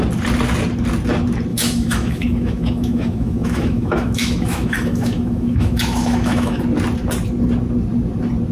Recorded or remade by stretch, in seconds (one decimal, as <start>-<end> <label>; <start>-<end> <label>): 0.0-1.5 recorded; 1.5-6.6 remade; 6.6-8.5 recorded